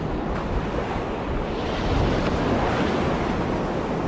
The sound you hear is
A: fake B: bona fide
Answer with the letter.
B